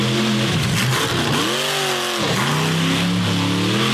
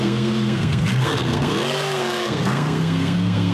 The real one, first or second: first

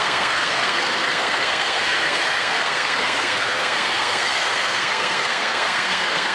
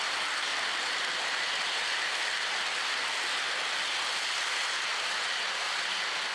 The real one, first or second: second